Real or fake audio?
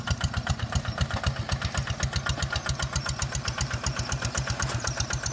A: real